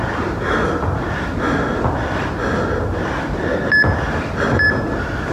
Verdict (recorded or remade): recorded